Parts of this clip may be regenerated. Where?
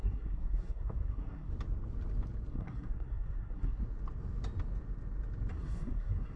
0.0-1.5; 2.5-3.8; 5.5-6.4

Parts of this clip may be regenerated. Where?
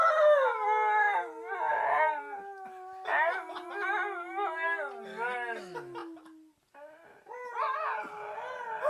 none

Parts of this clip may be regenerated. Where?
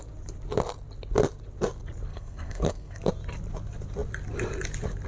2.1-3.0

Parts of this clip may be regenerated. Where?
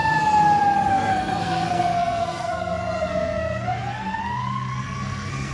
0.9-5.5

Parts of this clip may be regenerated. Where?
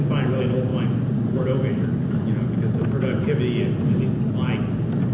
none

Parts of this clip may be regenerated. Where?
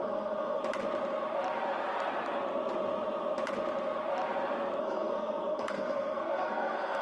0.0-0.6; 4.8-7.0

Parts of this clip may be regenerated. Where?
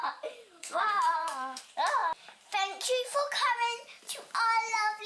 0.6-1.6